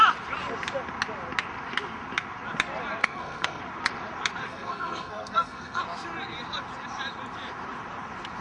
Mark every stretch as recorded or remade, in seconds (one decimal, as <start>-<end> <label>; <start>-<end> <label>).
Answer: 0.0-3.0 recorded; 3.0-3.6 remade; 3.6-4.5 recorded; 4.5-5.8 remade; 5.8-8.4 recorded